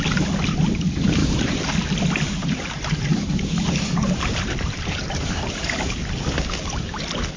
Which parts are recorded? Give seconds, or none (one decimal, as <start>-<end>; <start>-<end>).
0.0-1.2; 1.7-2.4; 5.5-7.4